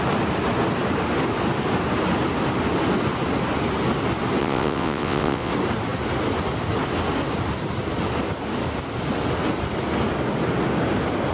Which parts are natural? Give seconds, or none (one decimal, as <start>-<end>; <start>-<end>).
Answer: 0.0-4.4; 5.5-11.3